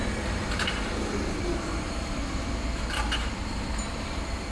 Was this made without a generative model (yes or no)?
no